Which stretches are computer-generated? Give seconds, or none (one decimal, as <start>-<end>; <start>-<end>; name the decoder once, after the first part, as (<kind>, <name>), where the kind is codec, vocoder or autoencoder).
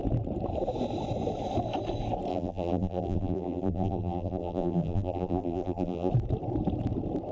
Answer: 2.3-6.1 (vocoder, BigVGAN v2)